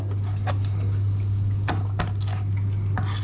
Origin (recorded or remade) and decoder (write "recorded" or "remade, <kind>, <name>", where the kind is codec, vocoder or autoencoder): recorded